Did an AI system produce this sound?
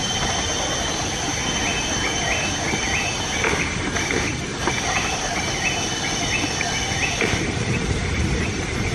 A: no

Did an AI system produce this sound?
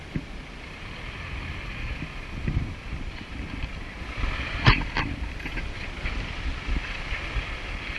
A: yes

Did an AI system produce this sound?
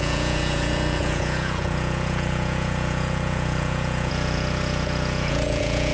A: yes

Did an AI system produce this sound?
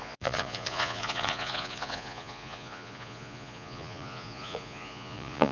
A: yes